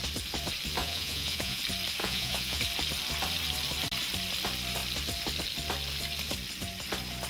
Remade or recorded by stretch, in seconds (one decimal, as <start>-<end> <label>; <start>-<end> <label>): 0.0-0.8 recorded; 0.8-1.6 remade; 1.6-2.0 recorded; 2.0-2.6 remade; 2.6-7.3 recorded